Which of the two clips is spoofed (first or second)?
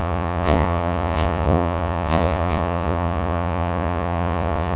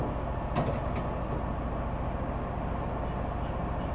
first